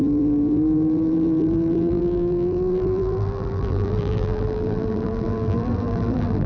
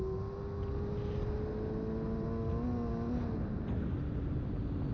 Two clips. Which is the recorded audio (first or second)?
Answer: second